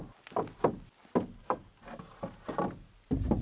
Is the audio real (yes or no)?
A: yes